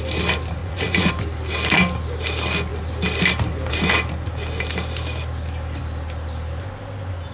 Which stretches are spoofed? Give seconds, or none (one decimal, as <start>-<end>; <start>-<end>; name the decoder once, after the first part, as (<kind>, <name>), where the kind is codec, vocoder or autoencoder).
0.6-1.1 (vocoder, Vocos)